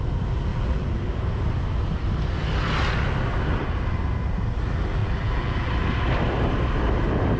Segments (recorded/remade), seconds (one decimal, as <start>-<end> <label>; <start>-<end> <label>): 0.0-0.5 recorded; 0.5-1.0 remade; 1.0-5.0 recorded; 5.0-5.7 remade; 5.7-7.4 recorded